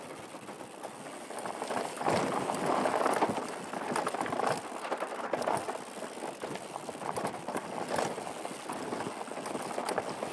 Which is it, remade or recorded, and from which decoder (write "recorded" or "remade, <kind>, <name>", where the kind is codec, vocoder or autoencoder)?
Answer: recorded